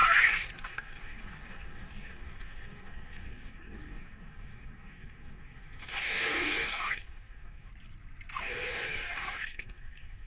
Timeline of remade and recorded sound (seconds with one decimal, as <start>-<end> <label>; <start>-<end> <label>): 0.0-7.7 remade; 7.7-8.4 recorded; 8.4-10.3 remade